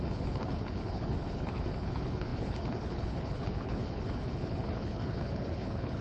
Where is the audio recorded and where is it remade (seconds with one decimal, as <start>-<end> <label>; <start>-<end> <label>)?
0.0-6.0 remade